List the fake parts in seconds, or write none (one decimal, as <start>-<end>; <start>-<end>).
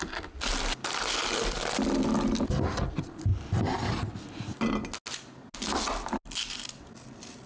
none